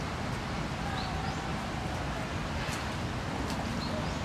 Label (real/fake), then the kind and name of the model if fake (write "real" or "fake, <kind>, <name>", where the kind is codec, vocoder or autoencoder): real